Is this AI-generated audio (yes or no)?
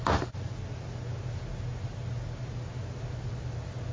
no